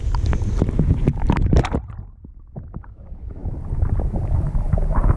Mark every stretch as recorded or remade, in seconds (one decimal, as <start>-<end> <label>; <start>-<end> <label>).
0.0-5.2 recorded